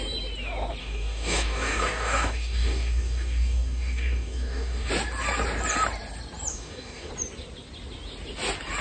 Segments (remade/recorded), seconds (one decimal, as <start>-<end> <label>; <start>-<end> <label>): 0.0-0.8 recorded; 0.8-4.9 remade; 4.9-6.5 recorded; 6.5-7.1 remade; 7.1-8.8 recorded

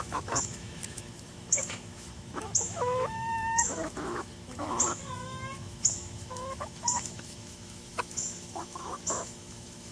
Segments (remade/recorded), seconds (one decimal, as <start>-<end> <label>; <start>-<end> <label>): 0.0-9.9 remade